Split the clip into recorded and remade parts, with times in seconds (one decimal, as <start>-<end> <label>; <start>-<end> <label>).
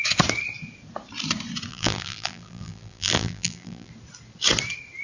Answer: 0.0-1.7 recorded; 1.7-3.9 remade; 3.9-5.0 recorded